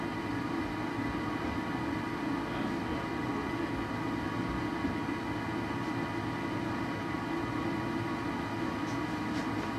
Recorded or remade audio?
recorded